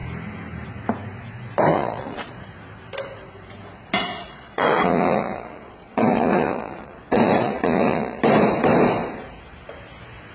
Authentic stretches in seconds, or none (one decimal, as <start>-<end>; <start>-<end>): 0.0-1.7; 2.3-4.1; 8.2-10.3

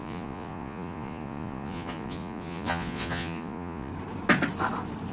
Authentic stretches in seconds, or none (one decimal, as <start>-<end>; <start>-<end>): 3.9-5.1

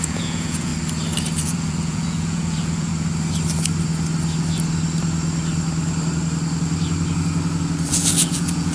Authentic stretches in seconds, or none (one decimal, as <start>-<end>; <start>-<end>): 0.7-1.4; 2.9-7.9

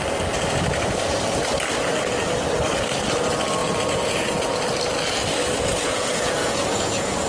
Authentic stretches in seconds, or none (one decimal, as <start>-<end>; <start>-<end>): 0.0-3.6; 4.6-5.7

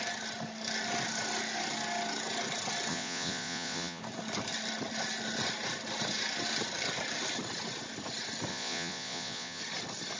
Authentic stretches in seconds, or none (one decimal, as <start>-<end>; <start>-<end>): 0.0-2.9; 4.0-8.5; 9.6-10.2

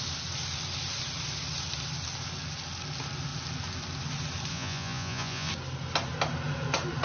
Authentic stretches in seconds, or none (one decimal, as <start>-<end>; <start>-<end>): 0.0-4.5; 5.5-7.0